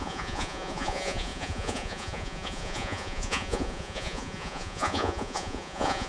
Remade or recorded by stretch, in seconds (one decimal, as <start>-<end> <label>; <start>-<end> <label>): 0.0-6.1 remade